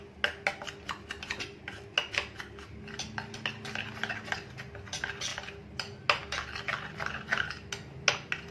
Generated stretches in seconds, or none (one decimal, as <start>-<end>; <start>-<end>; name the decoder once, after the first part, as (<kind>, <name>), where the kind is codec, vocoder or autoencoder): none